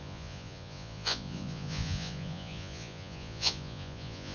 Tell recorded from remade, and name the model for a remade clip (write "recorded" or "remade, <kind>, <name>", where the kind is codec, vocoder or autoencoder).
remade, vocoder, Vocos